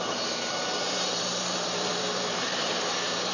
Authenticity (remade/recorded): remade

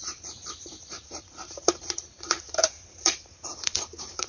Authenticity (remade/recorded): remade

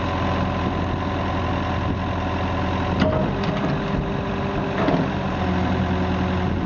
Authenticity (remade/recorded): recorded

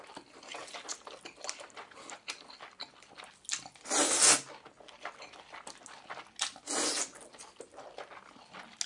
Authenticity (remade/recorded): recorded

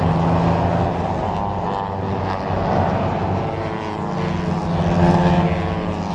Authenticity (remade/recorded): recorded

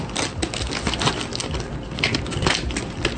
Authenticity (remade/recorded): recorded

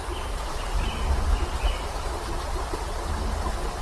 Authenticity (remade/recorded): recorded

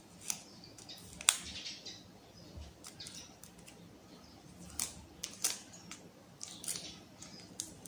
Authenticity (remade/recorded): remade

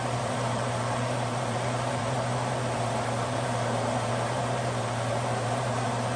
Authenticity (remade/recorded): remade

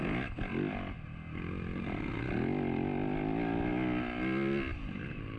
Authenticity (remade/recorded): recorded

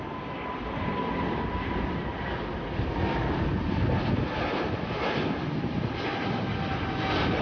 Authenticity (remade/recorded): recorded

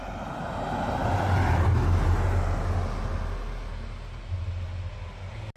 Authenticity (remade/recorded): recorded